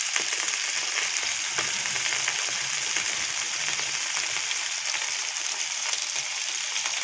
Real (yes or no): no